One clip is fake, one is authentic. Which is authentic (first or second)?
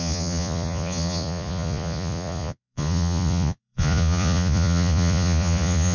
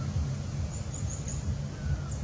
second